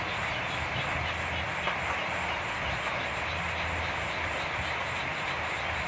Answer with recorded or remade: recorded